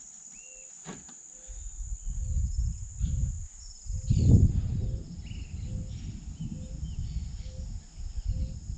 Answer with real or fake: real